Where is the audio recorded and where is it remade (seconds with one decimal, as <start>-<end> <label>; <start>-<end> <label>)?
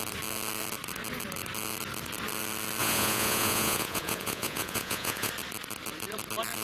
0.0-2.8 recorded; 2.8-5.3 remade; 5.3-6.6 recorded